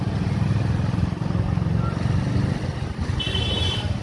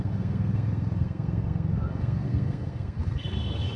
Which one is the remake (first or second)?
second